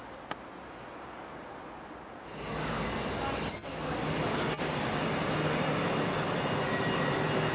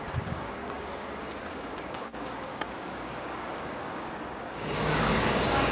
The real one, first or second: first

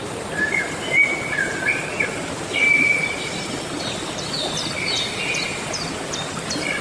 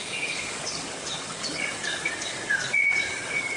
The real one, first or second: first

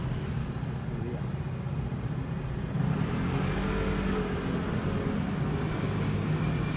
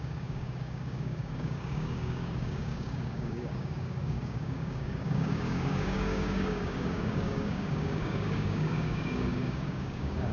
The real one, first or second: first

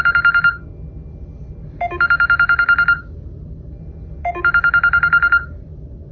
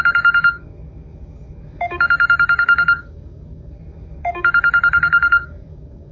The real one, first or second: first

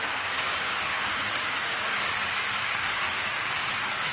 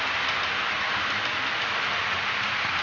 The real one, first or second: second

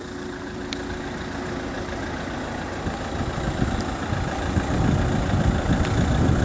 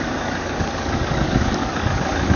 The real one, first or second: first